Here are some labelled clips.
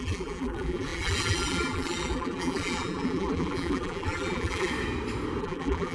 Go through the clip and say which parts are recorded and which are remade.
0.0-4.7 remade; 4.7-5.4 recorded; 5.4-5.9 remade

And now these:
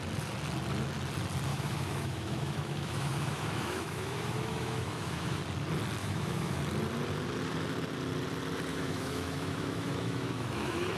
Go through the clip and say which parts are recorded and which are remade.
0.0-1.5 recorded; 1.5-5.4 remade; 5.4-6.0 recorded; 6.0-6.6 remade; 6.6-8.7 recorded; 8.7-11.0 remade

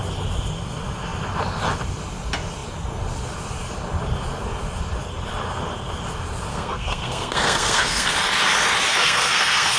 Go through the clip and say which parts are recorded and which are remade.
0.0-6.5 recorded; 6.5-8.1 remade; 8.1-8.9 recorded; 8.9-9.8 remade

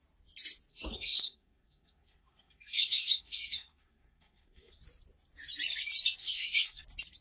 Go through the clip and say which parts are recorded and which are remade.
0.0-0.7 recorded; 0.7-4.7 remade; 4.7-6.2 recorded; 6.2-6.8 remade; 6.8-7.2 recorded